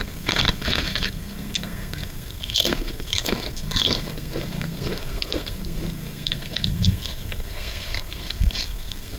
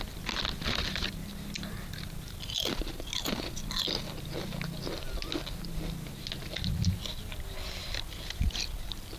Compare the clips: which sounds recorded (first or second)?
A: second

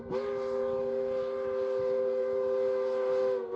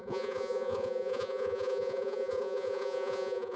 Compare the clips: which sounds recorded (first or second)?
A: first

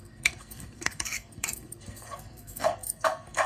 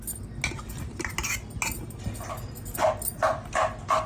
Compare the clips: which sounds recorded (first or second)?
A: second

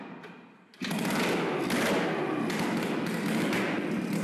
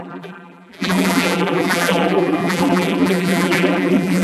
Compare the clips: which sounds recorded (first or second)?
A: first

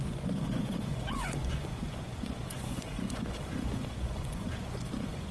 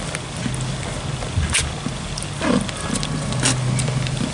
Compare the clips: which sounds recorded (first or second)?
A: second